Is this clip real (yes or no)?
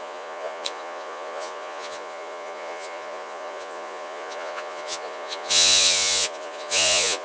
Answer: no